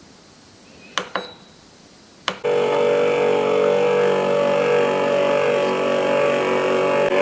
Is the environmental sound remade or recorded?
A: recorded